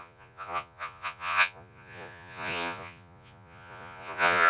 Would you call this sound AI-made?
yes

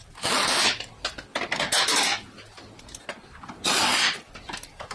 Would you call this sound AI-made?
no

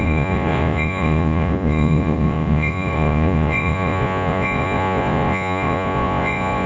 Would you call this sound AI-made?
yes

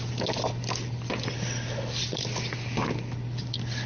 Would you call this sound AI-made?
no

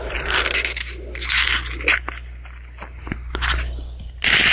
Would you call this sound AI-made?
no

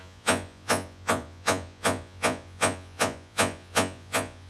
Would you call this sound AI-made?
yes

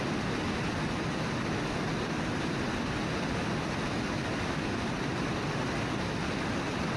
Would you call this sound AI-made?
no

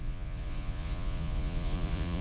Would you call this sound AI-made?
yes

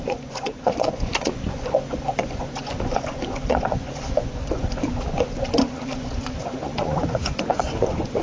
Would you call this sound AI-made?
yes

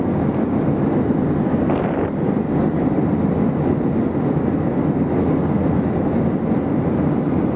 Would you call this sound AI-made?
no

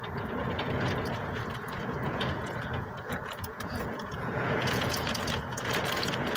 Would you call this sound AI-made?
yes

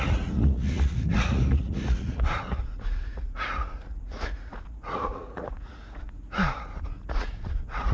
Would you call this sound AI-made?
yes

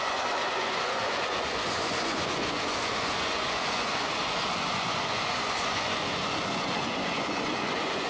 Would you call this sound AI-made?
yes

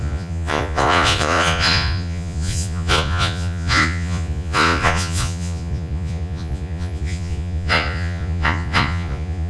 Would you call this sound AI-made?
yes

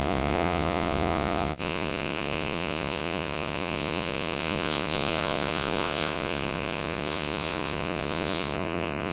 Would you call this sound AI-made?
yes